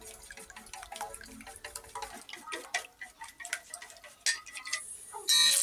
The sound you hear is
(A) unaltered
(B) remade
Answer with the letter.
A